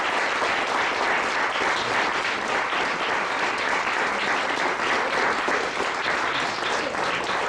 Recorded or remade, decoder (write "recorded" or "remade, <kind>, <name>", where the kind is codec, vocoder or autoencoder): recorded